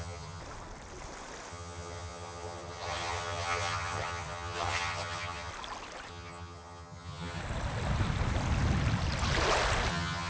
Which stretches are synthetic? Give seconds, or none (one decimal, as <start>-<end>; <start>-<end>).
0.0-0.4; 1.5-5.5; 6.1-7.4; 9.9-10.3